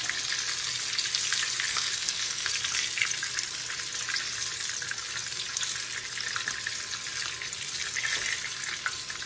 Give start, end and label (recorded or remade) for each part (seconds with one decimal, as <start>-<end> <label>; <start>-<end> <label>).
0.0-1.7 recorded; 1.7-2.5 remade; 2.5-9.3 recorded